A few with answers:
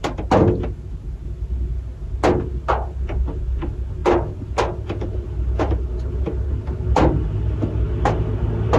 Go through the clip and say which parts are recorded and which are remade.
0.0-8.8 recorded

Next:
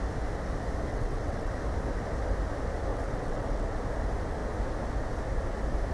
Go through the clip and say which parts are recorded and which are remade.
0.0-0.9 recorded; 0.9-1.5 remade; 1.5-2.9 recorded; 2.9-3.8 remade; 3.8-5.9 recorded

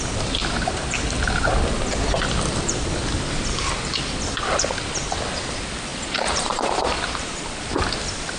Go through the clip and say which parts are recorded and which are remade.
0.0-5.9 recorded; 5.9-7.4 remade; 7.4-8.4 recorded